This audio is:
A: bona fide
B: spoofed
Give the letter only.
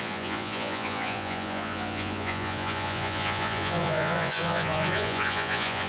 B